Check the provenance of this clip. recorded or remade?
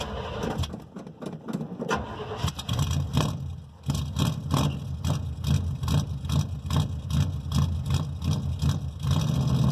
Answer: recorded